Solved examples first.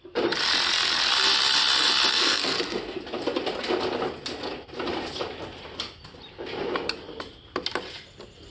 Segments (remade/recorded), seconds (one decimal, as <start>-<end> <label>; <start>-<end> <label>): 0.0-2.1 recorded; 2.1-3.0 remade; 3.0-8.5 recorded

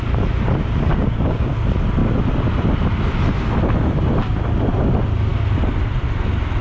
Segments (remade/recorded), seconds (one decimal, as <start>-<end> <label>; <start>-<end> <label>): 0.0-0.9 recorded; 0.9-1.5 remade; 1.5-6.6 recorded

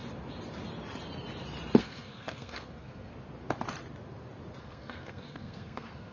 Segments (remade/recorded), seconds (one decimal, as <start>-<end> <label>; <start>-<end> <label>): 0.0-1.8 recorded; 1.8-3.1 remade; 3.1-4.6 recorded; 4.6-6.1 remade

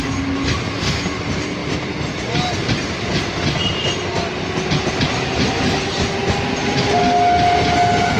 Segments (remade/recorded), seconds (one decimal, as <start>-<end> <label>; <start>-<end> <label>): 0.0-6.2 recorded; 6.2-7.0 remade; 7.0-8.2 recorded